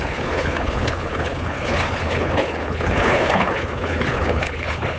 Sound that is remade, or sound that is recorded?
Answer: remade